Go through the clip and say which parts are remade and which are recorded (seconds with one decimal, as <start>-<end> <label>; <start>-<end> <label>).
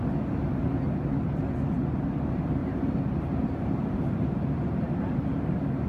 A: 0.0-2.6 recorded; 2.6-4.0 remade; 4.0-5.9 recorded